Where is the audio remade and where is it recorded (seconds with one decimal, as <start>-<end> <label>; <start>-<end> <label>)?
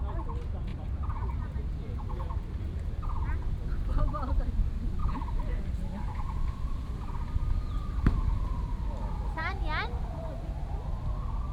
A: 0.0-0.7 recorded; 0.7-4.0 remade; 4.0-5.0 recorded; 5.0-9.2 remade; 9.2-11.5 recorded